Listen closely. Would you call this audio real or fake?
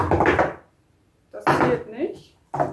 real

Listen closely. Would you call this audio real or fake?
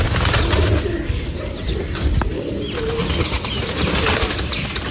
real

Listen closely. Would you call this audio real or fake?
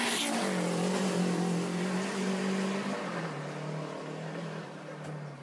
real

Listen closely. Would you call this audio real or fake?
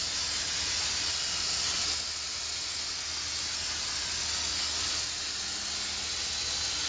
real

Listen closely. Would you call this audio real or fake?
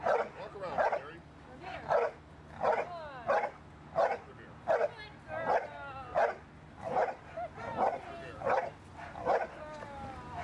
real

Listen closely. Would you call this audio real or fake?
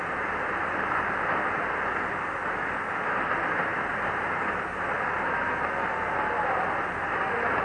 real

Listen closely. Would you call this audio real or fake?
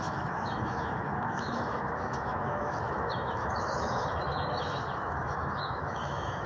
fake